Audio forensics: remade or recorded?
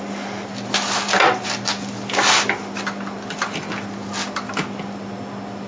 recorded